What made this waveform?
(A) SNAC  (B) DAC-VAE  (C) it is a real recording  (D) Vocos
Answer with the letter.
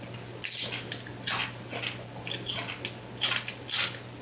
C